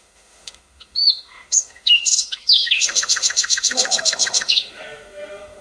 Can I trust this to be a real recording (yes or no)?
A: no